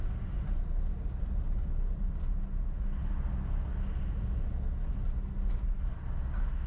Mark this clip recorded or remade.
recorded